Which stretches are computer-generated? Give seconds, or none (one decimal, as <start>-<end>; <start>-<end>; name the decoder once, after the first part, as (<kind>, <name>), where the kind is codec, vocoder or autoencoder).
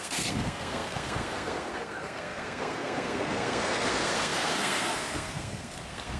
0.0-6.2 (codec, SNAC)